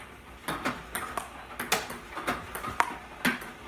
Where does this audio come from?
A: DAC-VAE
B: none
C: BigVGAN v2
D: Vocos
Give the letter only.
B